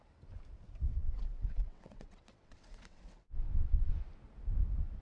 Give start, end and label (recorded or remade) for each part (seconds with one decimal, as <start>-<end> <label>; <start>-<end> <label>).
0.0-0.9 recorded; 0.9-3.9 remade; 3.9-5.0 recorded